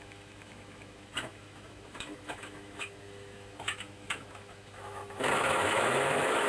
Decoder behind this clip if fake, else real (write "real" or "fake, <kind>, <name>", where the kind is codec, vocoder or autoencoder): fake, autoencoder, DAC-VAE